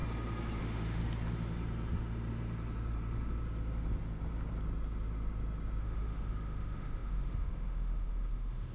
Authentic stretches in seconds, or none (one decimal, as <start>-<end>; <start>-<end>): 0.0-0.6; 1.0-5.8